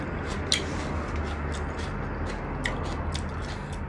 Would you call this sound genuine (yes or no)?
yes